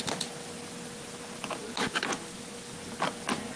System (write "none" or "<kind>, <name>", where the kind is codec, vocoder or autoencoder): none